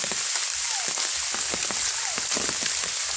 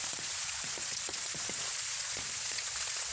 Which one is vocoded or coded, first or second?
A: second